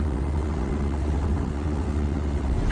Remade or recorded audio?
remade